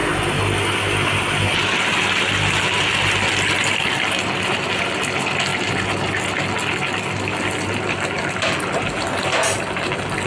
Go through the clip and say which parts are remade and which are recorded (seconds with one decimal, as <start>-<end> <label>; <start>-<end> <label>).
0.0-10.3 recorded